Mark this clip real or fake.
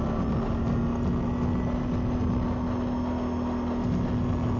real